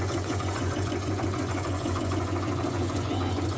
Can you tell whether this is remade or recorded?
remade